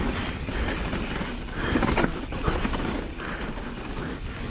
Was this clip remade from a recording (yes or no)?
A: no